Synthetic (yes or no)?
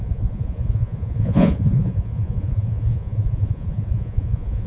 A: yes